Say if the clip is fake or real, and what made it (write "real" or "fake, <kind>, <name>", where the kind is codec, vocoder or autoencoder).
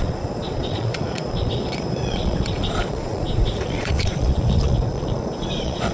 fake, vocoder, Vocos